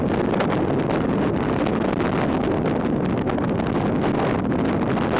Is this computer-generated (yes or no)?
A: no